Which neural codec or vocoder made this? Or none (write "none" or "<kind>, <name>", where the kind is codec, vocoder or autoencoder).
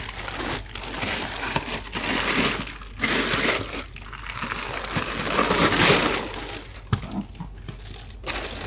none